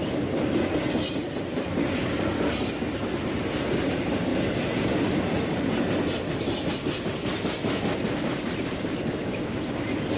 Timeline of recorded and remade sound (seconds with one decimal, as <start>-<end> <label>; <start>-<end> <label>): 0.0-10.2 recorded